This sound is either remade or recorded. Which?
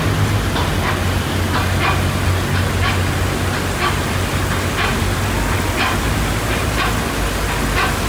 recorded